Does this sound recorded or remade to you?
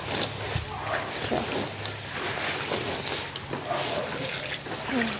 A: recorded